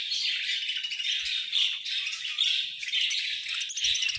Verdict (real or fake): real